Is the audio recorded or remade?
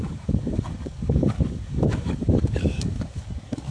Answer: remade